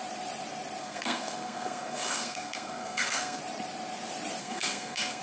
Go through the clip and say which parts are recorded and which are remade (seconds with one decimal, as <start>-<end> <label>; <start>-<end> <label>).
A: 0.0-0.8 recorded; 0.8-3.4 remade; 3.4-4.4 recorded; 4.4-5.2 remade